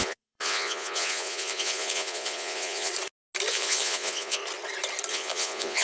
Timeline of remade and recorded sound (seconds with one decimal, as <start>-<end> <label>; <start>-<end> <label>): 0.0-2.9 remade; 2.9-3.5 recorded; 3.5-4.4 remade; 4.4-5.1 recorded; 5.1-5.8 remade